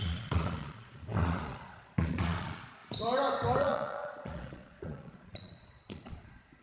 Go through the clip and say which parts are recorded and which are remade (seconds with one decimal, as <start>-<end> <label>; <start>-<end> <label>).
0.0-2.8 remade; 2.8-3.6 recorded; 3.6-6.6 remade